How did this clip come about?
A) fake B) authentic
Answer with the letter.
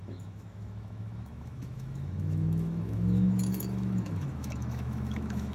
A